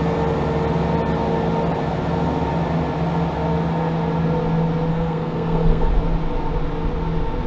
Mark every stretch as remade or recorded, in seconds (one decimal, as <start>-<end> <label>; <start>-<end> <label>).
0.0-4.9 recorded; 4.9-5.9 remade; 5.9-7.5 recorded